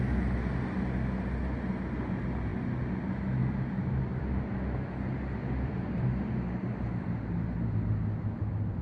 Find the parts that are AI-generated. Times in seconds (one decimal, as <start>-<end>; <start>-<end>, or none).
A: 2.5-3.0; 3.4-8.4